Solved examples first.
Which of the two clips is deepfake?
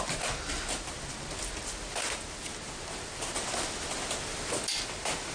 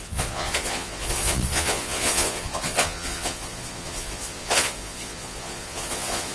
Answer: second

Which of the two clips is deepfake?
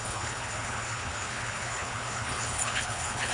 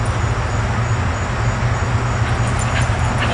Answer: first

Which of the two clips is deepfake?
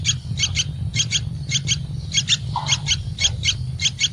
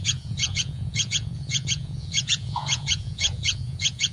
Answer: second